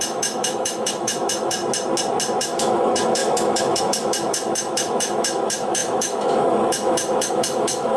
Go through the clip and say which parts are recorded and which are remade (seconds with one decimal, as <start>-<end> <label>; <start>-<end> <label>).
0.0-1.6 remade; 1.6-2.4 recorded; 2.4-8.0 remade